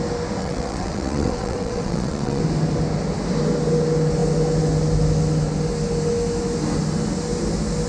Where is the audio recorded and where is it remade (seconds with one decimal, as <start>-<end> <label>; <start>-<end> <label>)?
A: 0.0-0.4 recorded; 0.4-2.4 remade; 2.4-7.9 recorded